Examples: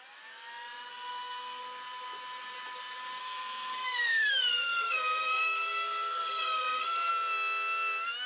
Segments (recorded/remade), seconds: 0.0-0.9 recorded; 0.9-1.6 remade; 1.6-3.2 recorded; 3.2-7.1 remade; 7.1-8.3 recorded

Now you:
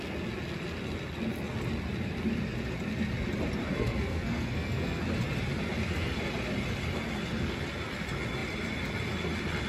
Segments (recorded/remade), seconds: 0.0-3.7 recorded; 3.7-5.0 remade; 5.0-9.7 recorded

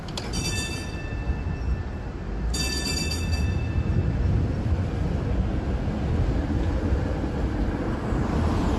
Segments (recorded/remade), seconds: 0.0-8.8 recorded

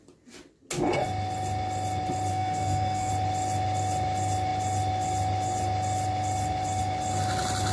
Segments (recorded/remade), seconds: 0.0-2.3 recorded; 2.3-3.1 remade; 3.1-7.7 recorded

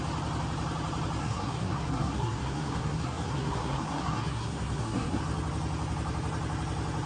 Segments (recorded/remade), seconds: 0.0-1.2 recorded; 1.2-5.2 remade; 5.2-7.1 recorded

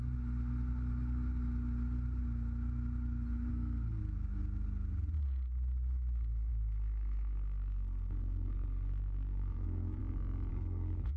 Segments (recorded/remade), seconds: 0.0-3.5 recorded; 3.5-4.0 remade; 4.0-6.5 recorded; 6.5-10.0 remade; 10.0-10.5 recorded; 10.5-11.2 remade

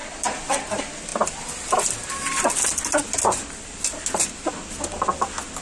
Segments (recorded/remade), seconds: 0.0-5.6 recorded